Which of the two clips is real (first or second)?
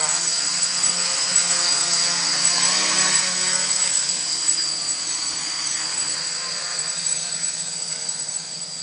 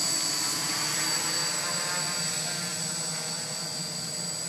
second